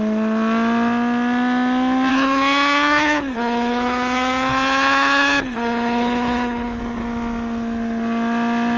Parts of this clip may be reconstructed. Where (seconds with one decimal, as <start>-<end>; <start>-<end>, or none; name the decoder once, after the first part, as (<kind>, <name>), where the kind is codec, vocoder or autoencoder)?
2.1-6.8 (codec, HILCodec)